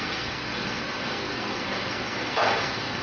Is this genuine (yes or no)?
no